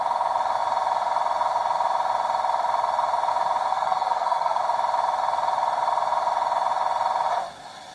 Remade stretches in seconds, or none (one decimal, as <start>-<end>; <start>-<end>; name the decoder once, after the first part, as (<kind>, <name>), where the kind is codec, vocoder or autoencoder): 3.7-4.6 (codec, SNAC)